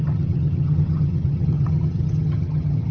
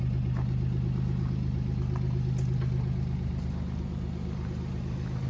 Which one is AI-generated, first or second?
first